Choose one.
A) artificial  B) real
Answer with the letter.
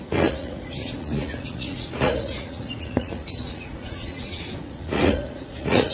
A